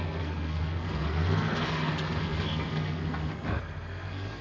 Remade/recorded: remade